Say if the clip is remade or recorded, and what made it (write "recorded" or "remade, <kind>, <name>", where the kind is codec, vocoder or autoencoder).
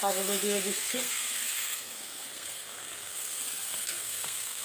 remade, codec, SNAC